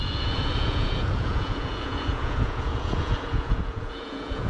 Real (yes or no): no